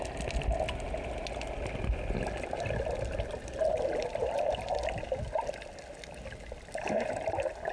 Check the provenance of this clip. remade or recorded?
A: recorded